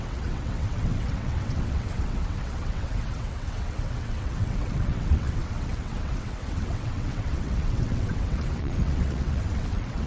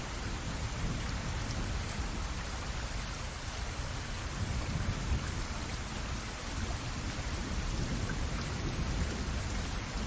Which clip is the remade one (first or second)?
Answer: first